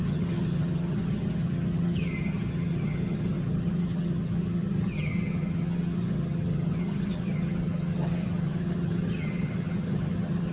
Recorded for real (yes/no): no